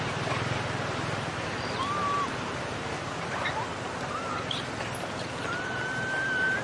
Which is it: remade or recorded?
recorded